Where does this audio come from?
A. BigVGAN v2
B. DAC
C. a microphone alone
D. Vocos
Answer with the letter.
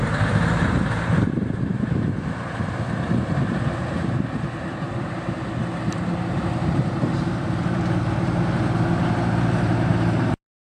A